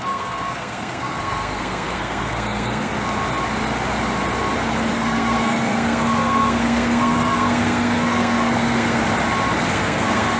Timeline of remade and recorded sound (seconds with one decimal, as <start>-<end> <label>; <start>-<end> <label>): 0.0-2.9 remade; 2.9-4.9 recorded; 4.9-9.0 remade; 9.0-9.6 recorded; 9.6-10.4 remade